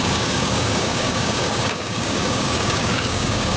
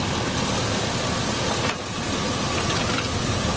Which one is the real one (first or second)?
second